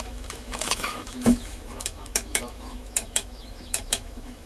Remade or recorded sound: remade